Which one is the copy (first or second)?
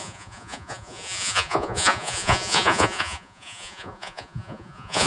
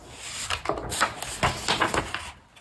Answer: first